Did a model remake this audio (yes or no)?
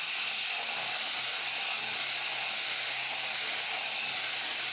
no